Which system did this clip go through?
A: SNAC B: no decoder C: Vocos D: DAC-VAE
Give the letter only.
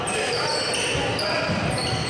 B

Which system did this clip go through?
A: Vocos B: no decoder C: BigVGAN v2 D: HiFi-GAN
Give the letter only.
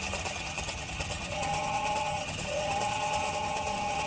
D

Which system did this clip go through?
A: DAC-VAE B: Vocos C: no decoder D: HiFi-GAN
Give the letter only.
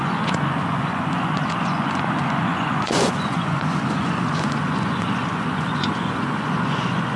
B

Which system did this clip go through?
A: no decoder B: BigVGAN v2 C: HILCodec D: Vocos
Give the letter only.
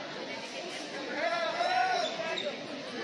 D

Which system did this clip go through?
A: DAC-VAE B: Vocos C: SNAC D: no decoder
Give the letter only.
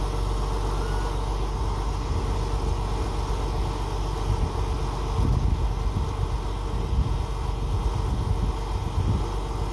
D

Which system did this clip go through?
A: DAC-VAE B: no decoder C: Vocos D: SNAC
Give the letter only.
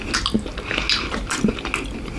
B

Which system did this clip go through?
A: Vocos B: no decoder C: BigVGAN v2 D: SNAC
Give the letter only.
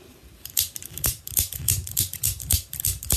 C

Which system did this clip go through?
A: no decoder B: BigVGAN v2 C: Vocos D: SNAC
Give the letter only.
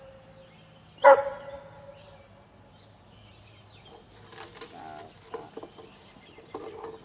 A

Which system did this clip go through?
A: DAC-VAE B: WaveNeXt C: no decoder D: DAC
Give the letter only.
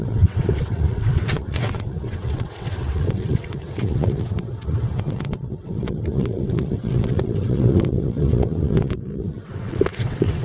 B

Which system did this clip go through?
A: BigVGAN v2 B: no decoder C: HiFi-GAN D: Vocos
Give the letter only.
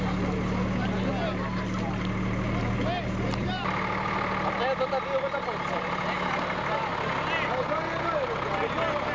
B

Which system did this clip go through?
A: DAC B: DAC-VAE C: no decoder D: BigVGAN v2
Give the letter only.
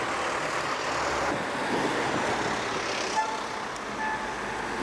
C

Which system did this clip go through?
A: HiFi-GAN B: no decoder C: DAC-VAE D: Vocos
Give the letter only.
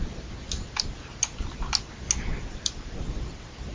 B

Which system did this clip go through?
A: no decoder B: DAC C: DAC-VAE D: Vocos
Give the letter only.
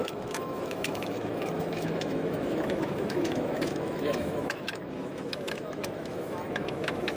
C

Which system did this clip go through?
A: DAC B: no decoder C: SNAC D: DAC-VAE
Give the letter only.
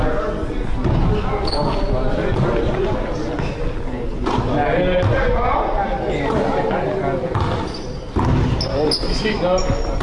B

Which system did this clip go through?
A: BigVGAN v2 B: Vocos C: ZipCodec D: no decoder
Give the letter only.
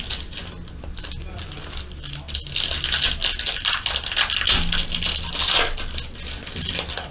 D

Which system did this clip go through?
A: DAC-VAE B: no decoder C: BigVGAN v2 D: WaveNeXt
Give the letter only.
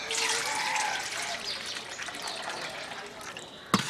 B